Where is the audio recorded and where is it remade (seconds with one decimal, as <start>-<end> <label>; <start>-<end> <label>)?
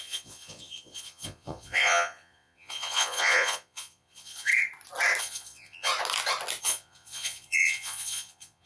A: 0.0-4.5 remade; 4.5-5.2 recorded; 5.2-5.9 remade; 5.9-6.6 recorded; 6.6-8.7 remade